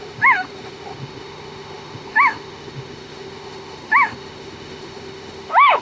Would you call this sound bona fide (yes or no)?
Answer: no